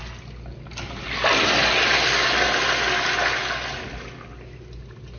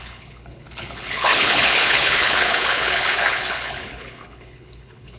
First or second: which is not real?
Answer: second